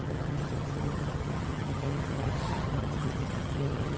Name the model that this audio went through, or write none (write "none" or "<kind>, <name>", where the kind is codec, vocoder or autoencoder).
vocoder, HiFi-GAN